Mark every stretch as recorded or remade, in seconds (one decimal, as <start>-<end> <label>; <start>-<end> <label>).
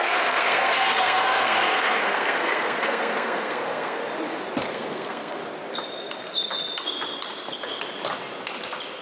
0.0-4.0 remade; 4.0-4.6 recorded; 4.6-5.4 remade; 5.4-9.0 recorded